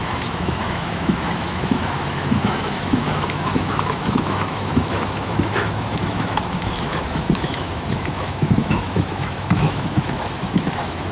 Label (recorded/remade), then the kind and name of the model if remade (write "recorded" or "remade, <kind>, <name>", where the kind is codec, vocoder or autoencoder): remade, autoencoder, DAC-VAE